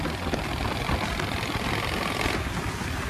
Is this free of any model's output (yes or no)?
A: yes